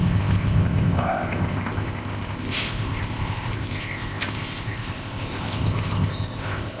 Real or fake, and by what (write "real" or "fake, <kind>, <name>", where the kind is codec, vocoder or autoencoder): fake, codec, ZipCodec